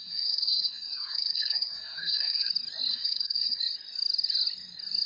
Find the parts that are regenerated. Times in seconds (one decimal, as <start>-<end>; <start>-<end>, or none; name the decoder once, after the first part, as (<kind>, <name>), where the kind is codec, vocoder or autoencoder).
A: 0.0-2.5 (codec, SNAC); 2.9-3.6